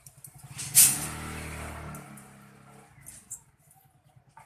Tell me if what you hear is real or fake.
real